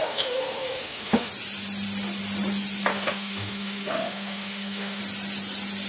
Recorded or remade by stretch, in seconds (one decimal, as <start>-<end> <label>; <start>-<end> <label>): 0.0-1.3 remade; 1.3-2.9 recorded; 2.9-5.0 remade; 5.0-5.9 recorded